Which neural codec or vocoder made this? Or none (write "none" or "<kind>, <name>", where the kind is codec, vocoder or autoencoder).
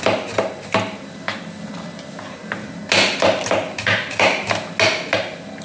none